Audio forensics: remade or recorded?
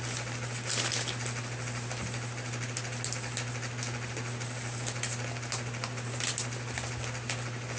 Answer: recorded